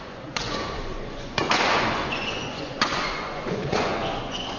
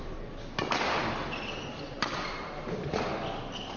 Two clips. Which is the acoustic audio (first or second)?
second